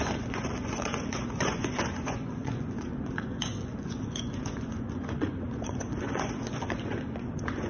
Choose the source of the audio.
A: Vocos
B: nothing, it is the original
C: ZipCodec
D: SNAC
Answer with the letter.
A